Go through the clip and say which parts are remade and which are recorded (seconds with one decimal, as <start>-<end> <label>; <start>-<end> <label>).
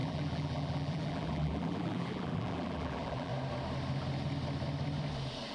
0.0-3.3 remade; 3.3-5.5 recorded